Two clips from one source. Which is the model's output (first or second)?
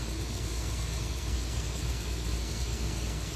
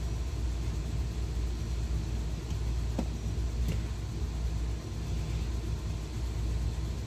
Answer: first